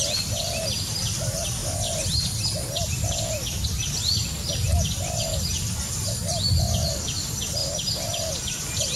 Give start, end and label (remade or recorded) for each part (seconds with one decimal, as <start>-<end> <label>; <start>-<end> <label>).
0.0-1.6 remade; 1.6-2.2 recorded; 2.2-7.6 remade; 7.6-8.6 recorded; 8.6-9.0 remade